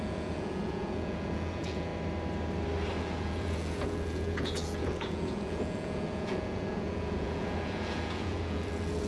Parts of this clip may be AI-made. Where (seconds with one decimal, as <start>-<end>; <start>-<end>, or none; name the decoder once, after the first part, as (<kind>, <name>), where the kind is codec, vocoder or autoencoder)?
0.0-1.9 (vocoder, Vocos); 3.0-9.1